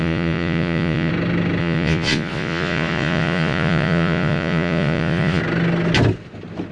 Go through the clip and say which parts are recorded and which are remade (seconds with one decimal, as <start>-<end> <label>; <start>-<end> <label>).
0.0-1.1 remade; 1.1-1.6 recorded; 1.6-5.4 remade; 5.4-6.7 recorded